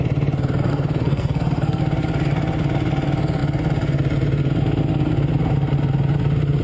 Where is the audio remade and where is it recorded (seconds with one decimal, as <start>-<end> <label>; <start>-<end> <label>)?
0.0-0.7 recorded; 0.7-1.8 remade; 1.8-6.6 recorded